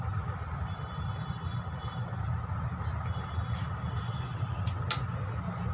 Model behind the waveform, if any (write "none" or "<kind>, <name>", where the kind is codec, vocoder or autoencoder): none